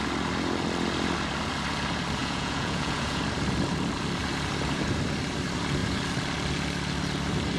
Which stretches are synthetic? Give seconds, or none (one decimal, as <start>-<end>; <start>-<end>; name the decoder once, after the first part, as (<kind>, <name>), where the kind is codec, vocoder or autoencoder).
2.2-3.2 (vocoder, Vocos)